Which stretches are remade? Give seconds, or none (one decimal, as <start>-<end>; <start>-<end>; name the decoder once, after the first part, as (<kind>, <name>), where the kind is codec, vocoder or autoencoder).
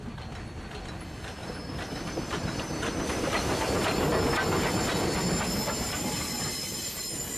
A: 1.4-3.0 (vocoder, BigVGAN v2)